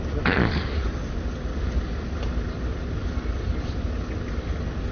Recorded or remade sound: recorded